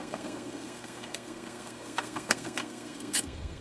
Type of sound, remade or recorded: remade